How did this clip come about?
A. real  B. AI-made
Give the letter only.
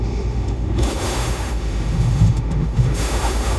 B